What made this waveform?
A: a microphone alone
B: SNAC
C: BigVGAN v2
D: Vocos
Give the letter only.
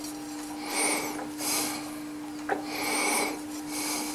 A